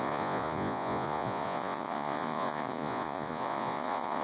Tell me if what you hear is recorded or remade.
remade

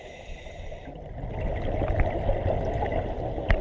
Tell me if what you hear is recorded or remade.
recorded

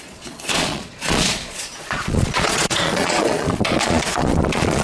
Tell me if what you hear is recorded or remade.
remade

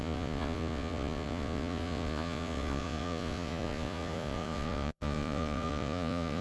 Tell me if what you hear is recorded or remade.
remade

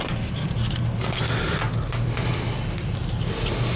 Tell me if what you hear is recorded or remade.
recorded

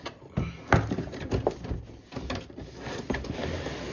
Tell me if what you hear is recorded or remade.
recorded